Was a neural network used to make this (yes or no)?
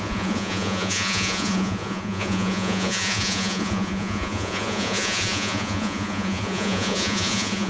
yes